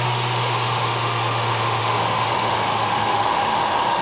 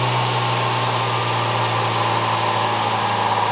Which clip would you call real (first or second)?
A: second